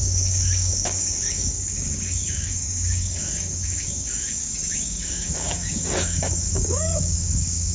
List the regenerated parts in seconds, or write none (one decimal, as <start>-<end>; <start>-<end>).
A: 0.0-7.7

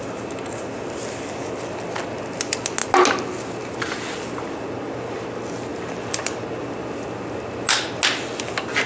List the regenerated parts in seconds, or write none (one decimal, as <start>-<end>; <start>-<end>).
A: none

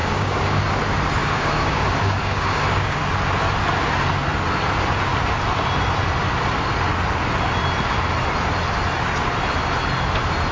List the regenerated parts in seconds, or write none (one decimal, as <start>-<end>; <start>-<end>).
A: 0.0-0.7; 1.2-3.0

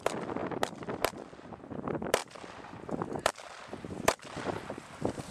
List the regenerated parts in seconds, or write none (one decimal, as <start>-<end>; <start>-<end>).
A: none

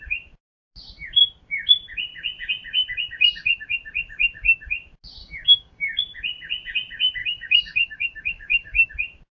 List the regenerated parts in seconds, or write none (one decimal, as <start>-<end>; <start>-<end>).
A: 5.2-6.0; 7.2-8.9

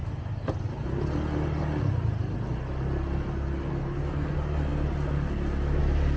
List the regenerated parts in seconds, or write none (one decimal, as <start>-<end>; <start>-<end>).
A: none

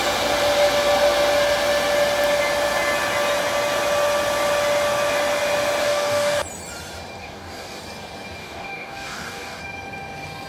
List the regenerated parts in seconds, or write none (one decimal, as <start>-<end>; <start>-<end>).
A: 5.8-6.4; 7.2-7.8; 8.4-9.6

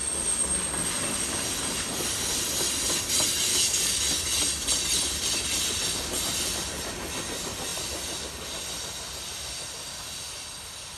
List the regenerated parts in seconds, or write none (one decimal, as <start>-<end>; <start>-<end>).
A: 3.5-4.0